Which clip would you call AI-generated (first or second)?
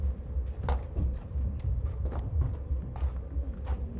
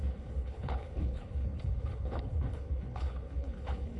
second